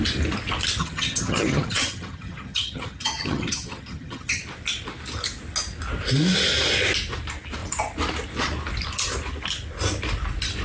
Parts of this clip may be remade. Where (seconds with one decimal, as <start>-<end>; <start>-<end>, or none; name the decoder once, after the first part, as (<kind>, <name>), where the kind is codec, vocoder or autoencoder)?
0.8-4.4 (vocoder, HiFi-GAN)